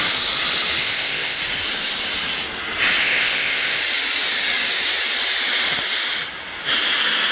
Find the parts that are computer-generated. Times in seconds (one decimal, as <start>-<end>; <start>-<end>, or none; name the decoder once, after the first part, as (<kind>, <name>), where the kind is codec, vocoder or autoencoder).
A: 0.8-1.4 (codec, ZipCodec); 3.0-3.8

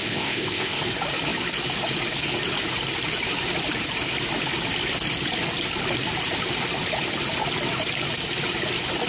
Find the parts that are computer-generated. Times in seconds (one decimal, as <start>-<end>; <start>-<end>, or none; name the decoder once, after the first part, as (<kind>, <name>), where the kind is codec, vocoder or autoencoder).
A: 0.0-0.8 (codec, ZipCodec)

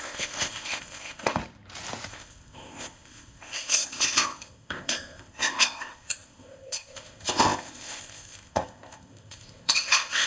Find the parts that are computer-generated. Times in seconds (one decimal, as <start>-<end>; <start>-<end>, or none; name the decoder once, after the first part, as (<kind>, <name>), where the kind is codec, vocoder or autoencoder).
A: 0.0-1.4 (codec, ZipCodec); 2.1-10.3

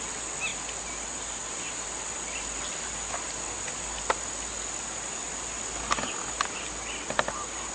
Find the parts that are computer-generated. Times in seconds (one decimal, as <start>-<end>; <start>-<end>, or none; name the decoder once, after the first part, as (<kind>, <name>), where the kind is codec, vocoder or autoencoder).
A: none

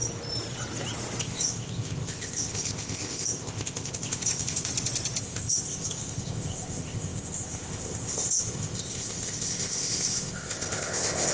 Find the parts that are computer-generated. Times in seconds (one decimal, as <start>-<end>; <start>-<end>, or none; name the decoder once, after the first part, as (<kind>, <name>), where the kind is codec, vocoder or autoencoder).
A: 1.2-4.7 (codec, ZipCodec); 5.2-11.3

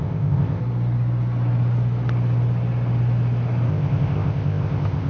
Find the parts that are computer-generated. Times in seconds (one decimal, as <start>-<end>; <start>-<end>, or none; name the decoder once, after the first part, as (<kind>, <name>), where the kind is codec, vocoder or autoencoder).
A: 0.0-0.6 (codec, ZipCodec); 3.7-5.1

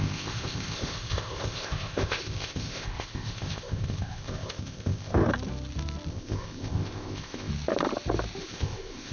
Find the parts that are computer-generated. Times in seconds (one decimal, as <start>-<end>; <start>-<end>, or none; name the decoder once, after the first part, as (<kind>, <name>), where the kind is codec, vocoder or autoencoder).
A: 0.0-5.3 (codec, ZipCodec); 6.1-7.5; 8.4-9.1